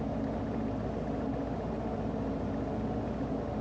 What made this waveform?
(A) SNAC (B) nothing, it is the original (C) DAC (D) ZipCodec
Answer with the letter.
B